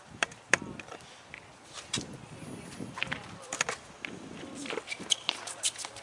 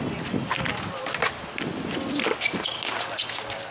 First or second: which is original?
second